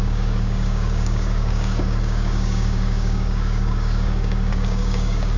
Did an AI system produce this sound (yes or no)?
yes